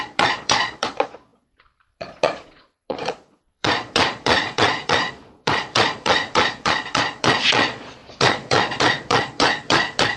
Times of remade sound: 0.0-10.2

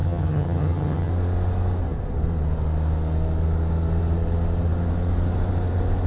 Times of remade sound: 0.0-1.1